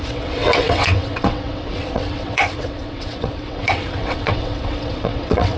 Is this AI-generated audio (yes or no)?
yes